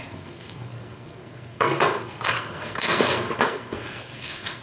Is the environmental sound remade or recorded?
remade